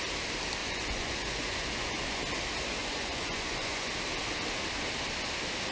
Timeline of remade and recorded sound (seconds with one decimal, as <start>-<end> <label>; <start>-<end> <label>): 0.0-0.6 recorded; 0.6-2.2 remade; 2.2-2.8 recorded; 2.8-3.9 remade; 3.9-5.7 recorded